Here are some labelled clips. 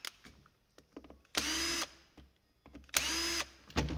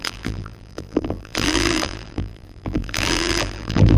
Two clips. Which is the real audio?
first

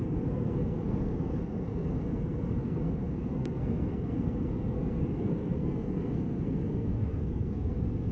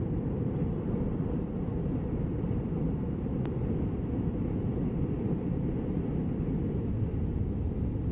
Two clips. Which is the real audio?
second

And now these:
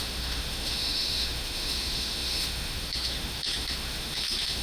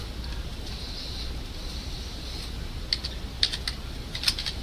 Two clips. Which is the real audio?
second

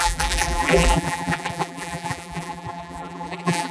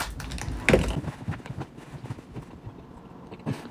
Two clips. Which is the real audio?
second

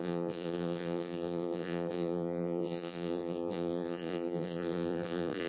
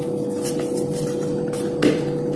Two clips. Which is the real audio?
second